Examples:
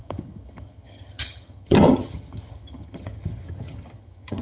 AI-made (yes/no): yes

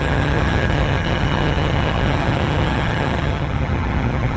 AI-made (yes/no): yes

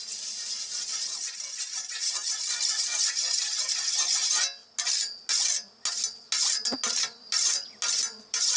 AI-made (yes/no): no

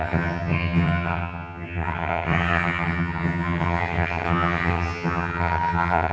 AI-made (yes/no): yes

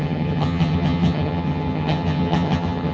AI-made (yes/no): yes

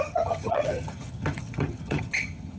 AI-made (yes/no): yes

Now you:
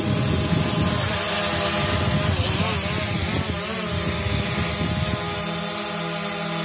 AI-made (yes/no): no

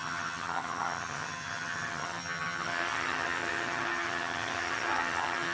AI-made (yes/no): yes